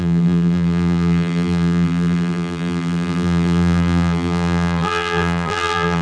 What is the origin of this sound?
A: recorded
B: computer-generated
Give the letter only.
B